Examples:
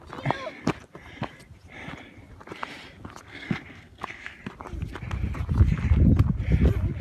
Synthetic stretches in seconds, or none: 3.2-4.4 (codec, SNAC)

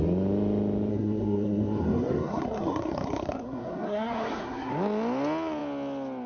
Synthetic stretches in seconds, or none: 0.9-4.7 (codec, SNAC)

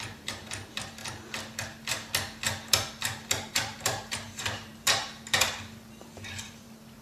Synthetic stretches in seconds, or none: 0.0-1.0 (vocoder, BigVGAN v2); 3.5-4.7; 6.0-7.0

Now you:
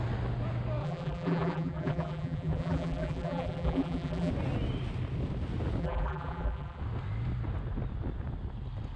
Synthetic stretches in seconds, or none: 0.8-4.3 (vocoder, BigVGAN v2); 5.8-6.8